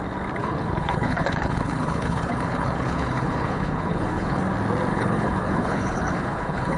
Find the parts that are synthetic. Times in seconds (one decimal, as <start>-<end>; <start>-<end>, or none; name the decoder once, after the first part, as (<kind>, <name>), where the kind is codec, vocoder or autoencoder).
0.4-4.4 (codec, HILCodec); 4.9-6.8